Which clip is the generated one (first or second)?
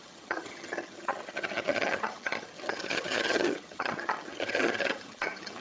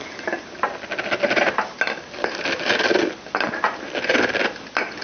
first